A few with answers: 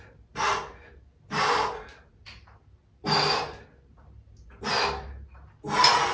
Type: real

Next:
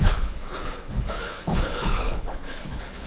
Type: fake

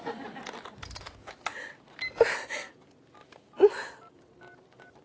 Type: real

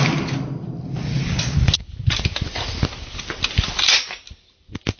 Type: real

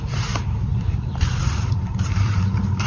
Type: fake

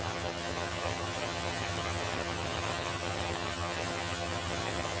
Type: fake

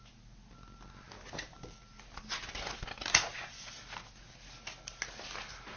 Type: real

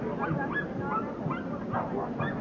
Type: real